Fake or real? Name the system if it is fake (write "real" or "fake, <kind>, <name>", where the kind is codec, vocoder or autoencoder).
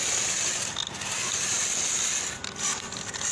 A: real